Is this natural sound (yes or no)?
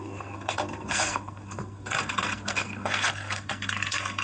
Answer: no